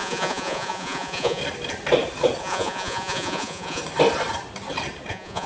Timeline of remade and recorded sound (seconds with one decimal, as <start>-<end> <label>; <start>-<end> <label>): 0.0-1.4 remade; 1.4-2.4 recorded; 2.4-3.8 remade; 3.8-5.1 recorded; 5.1-5.5 remade